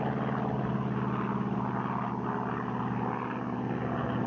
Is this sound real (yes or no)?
yes